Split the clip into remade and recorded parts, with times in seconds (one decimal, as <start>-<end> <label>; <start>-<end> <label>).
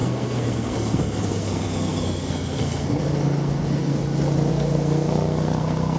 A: 0.0-4.0 remade; 4.0-4.5 recorded; 4.5-6.0 remade